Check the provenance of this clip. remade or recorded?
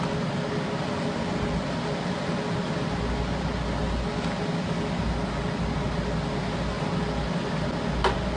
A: recorded